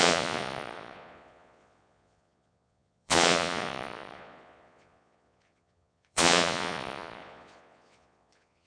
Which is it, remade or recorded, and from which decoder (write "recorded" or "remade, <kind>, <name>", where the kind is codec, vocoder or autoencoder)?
remade, vocoder, Vocos